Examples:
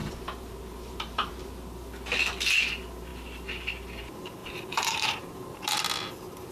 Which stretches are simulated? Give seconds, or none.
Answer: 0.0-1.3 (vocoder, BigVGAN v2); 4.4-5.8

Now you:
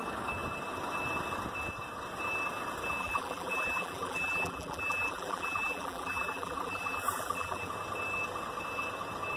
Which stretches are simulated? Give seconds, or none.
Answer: 3.0-7.7 (vocoder, BigVGAN v2)

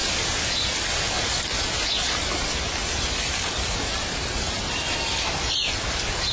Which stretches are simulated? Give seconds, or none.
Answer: 2.8-4.6 (vocoder, BigVGAN v2)

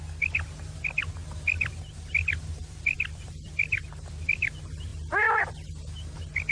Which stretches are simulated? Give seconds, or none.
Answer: 2.6-4.5 (vocoder, BigVGAN v2)

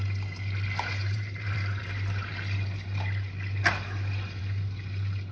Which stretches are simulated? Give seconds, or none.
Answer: 1.0-1.8 (vocoder, BigVGAN v2)

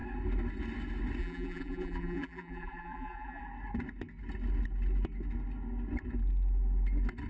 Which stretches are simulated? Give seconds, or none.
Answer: 1.2-3.4 (vocoder, BigVGAN v2)

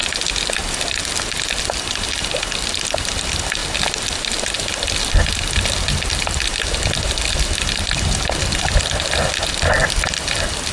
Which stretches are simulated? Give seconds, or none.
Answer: 1.6-3.6 (vocoder, BigVGAN v2); 4.3-10.7